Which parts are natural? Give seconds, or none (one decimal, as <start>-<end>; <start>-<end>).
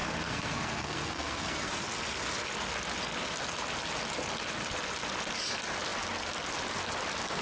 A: 1.7-7.4